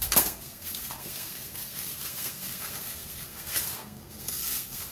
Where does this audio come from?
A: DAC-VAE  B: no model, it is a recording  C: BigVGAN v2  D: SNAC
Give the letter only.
D